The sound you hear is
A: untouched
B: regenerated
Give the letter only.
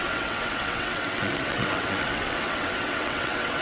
B